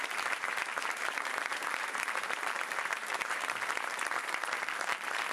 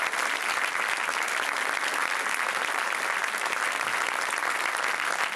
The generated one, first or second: first